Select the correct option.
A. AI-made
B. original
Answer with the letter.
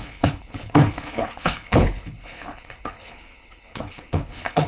A